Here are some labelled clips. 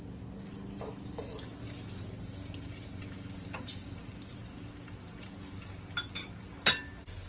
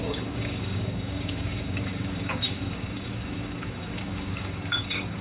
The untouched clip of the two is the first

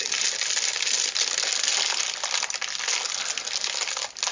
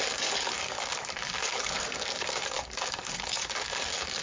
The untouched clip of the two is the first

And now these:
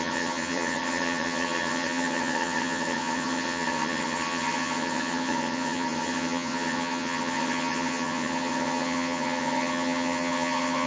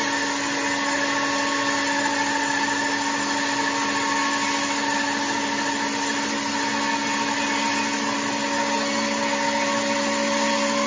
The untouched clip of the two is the second